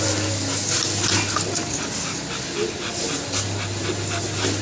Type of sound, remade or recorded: recorded